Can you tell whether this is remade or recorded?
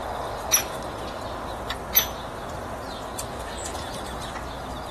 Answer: recorded